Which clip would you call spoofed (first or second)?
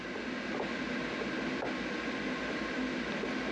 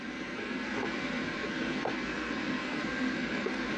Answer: second